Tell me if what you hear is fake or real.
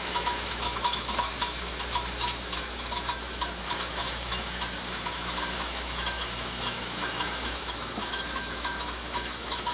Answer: fake